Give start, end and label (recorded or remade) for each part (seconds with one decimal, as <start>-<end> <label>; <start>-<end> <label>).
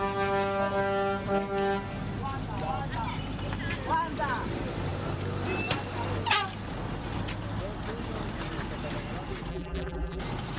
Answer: 0.0-9.5 recorded; 9.5-10.2 remade; 10.2-10.6 recorded